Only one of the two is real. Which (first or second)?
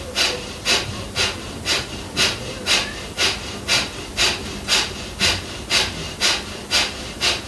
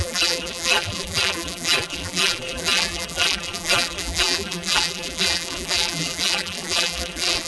first